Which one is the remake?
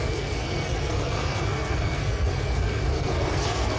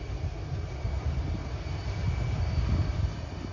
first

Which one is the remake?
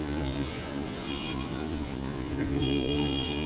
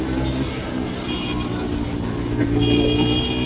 first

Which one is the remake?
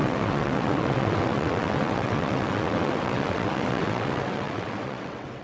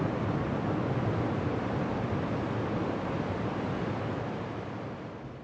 first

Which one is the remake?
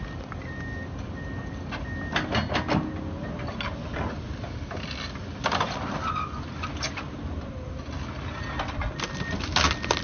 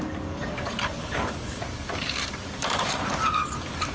second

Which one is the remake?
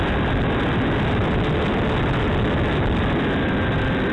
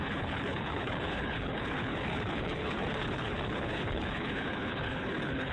second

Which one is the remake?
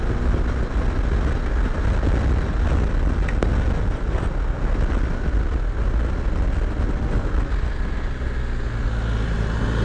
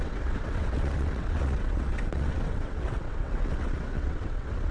second